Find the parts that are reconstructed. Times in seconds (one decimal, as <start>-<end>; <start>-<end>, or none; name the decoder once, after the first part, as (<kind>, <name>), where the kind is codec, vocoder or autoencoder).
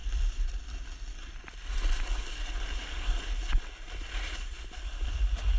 none